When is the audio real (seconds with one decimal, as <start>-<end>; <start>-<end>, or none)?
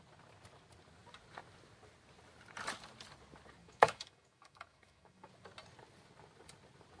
0.0-3.6; 5.3-7.0